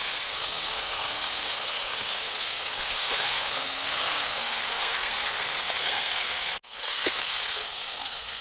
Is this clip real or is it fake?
fake